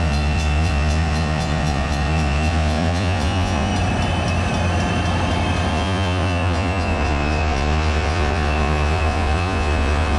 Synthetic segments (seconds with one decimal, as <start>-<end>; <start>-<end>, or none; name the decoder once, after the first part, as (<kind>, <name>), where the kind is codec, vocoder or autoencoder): 0.0-3.7 (vocoder, Vocos); 5.7-10.2